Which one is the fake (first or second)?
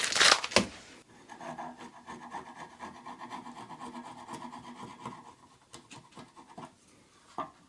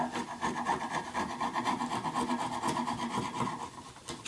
second